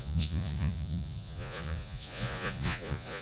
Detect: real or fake fake